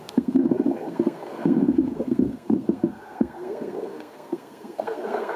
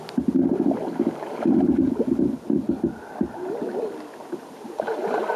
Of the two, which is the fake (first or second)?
first